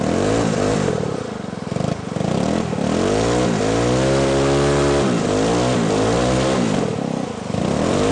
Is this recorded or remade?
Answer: recorded